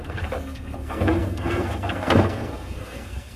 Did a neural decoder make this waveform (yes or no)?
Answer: yes